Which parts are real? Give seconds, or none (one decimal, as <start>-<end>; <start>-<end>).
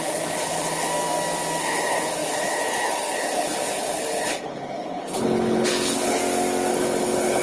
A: 0.9-1.6; 6.2-6.7